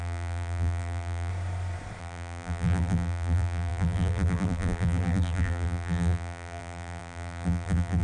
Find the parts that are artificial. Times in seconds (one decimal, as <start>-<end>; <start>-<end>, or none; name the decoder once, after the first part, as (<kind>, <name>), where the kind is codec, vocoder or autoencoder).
0.0-1.3 (vocoder, BigVGAN v2); 2.0-8.0